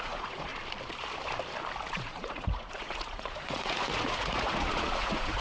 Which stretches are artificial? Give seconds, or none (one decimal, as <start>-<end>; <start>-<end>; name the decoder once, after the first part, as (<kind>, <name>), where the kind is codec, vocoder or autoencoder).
0.0-0.5 (vocoder, Vocos); 1.9-5.4